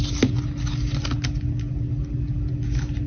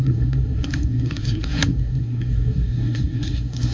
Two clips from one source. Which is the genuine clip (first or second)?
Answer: first